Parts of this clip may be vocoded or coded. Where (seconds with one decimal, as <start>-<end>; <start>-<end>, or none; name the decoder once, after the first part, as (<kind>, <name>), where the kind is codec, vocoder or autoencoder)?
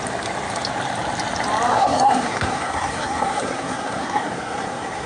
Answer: 1.7-5.1 (codec, SNAC)